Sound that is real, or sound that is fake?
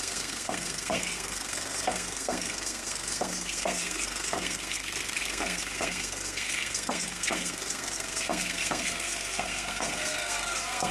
fake